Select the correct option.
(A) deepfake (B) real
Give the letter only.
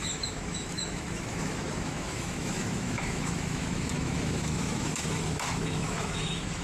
A